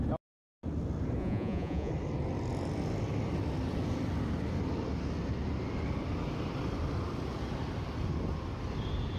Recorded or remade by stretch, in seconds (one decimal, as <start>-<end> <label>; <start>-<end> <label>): 0.0-1.2 recorded; 1.2-1.9 remade; 1.9-9.2 recorded

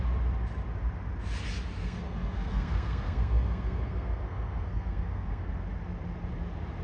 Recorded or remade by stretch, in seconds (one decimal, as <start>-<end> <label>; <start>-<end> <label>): 0.0-1.8 recorded; 1.8-5.5 remade; 5.5-6.8 recorded

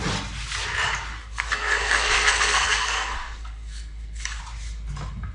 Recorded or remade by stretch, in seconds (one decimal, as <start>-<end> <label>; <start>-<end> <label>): 0.0-1.2 recorded; 1.2-4.4 remade; 4.4-5.3 recorded